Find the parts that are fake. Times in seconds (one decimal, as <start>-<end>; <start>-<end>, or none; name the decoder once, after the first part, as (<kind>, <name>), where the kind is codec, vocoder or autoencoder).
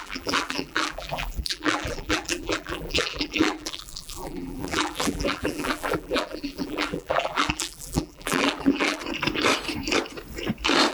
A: 0.0-9.0 (vocoder, BigVGAN v2)